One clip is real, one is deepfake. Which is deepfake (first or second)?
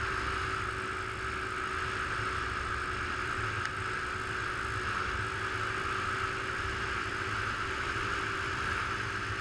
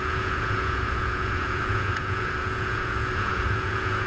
second